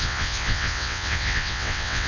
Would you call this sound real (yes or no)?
no